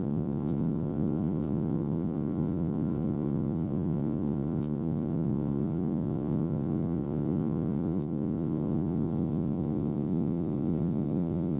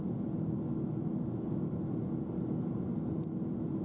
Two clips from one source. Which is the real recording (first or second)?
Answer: second